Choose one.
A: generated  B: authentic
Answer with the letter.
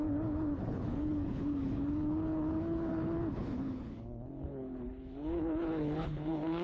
A